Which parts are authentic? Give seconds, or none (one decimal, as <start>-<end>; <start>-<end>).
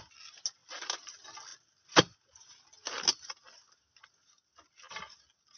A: 0.0-5.6